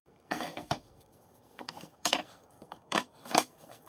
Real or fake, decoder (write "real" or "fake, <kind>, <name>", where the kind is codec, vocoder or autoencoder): fake, codec, SNAC